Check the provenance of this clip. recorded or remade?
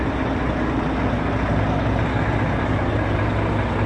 recorded